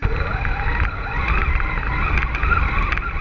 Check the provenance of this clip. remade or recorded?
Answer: recorded